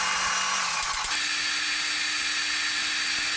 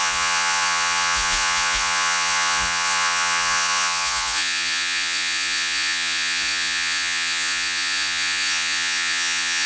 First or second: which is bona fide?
first